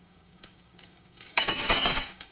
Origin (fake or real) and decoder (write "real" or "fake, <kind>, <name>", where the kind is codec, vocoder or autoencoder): fake, codec, DAC